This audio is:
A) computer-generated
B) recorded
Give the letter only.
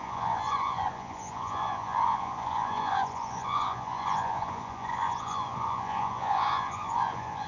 A